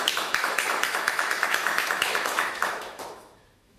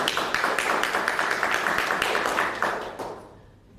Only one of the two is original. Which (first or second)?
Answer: second